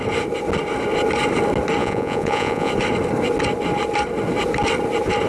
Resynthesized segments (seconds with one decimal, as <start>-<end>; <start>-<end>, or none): 1.8-2.7